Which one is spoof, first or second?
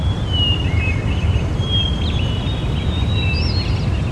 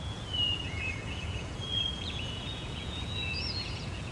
second